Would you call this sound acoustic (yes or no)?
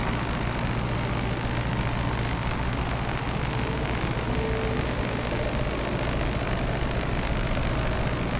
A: yes